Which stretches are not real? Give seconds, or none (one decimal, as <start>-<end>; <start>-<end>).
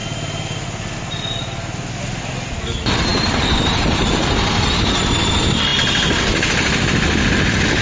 3.1-5.3